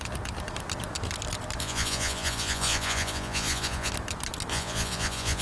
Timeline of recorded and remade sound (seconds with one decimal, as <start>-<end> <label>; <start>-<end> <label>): 0.0-1.6 recorded; 1.6-3.9 remade; 3.9-4.5 recorded; 4.5-5.4 remade